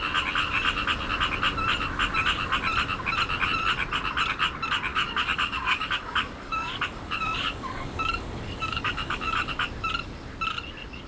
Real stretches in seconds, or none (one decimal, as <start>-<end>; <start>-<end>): 0.0-4.9; 9.5-11.1